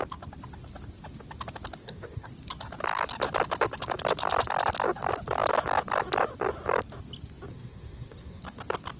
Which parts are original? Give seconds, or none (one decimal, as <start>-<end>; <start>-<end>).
0.0-1.8; 2.3-7.5; 8.4-9.0